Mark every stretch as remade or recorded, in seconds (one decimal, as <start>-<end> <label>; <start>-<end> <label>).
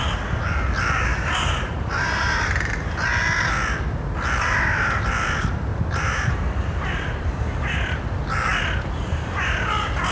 0.0-1.1 recorded; 1.1-2.7 remade; 2.7-5.7 recorded; 5.7-7.3 remade; 7.3-10.1 recorded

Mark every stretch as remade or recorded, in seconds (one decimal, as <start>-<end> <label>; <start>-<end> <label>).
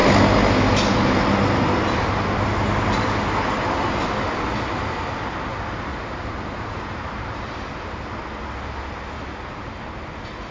0.0-5.9 recorded; 5.9-7.6 remade; 7.6-10.5 recorded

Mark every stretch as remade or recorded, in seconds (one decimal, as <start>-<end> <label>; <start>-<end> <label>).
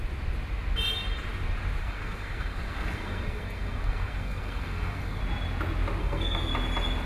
0.0-1.8 recorded; 1.8-5.2 remade; 5.2-6.0 recorded; 6.0-6.5 remade; 6.5-7.1 recorded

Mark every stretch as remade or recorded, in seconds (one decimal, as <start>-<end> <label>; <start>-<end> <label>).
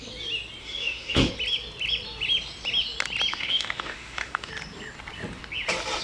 0.0-0.6 recorded; 0.6-1.3 remade; 1.3-3.3 recorded; 3.3-4.5 remade; 4.5-6.0 recorded